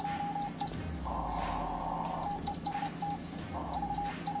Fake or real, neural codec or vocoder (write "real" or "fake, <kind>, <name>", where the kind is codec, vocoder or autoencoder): real